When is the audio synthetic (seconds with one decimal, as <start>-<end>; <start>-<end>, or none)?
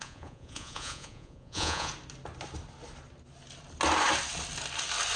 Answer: 0.0-1.9